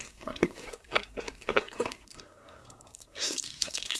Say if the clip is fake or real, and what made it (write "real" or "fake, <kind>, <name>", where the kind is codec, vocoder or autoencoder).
fake, codec, SNAC